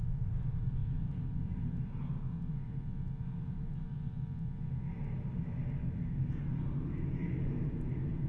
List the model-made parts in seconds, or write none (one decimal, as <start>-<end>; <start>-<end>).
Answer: none